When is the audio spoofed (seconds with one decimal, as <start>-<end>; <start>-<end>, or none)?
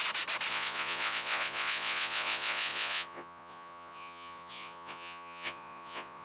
0.5-6.2